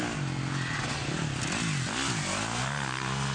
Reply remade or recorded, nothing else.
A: recorded